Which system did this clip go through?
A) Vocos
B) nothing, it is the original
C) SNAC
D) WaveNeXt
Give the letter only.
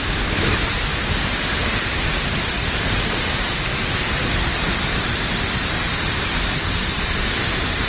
B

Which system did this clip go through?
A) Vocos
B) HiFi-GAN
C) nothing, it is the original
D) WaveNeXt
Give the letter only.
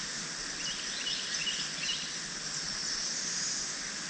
C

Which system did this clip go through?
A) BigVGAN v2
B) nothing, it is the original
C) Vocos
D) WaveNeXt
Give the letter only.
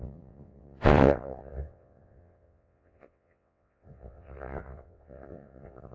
D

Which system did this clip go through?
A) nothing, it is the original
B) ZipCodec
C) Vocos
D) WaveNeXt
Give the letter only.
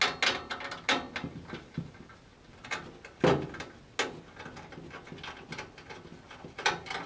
A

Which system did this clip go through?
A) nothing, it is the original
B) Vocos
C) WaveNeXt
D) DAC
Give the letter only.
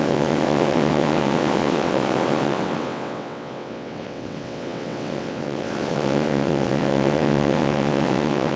C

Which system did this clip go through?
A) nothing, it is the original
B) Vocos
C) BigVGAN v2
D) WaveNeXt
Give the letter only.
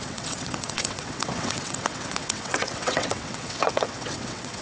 D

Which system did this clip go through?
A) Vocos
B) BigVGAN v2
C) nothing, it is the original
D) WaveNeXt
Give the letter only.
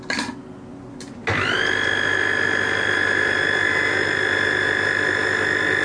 C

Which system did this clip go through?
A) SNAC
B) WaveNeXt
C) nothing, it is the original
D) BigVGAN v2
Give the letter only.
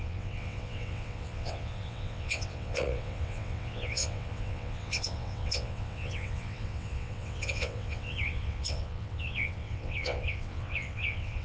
B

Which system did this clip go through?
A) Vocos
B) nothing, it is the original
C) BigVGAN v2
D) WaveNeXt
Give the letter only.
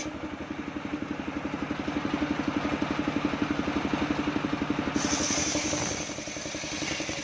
B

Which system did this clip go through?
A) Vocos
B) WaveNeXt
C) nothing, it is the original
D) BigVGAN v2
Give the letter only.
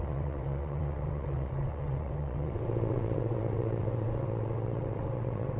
B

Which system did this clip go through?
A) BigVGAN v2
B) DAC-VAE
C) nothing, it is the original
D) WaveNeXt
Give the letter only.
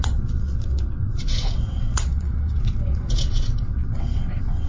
D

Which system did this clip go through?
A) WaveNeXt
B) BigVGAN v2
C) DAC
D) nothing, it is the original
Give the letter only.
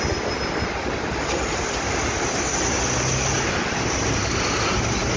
D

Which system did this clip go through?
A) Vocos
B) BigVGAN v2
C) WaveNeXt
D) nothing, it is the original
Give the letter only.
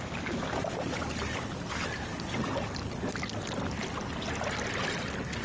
D